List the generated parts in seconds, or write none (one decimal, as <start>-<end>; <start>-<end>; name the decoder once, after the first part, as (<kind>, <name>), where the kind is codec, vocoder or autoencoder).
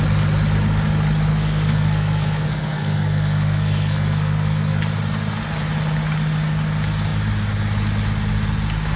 1.3-4.8 (codec, SNAC)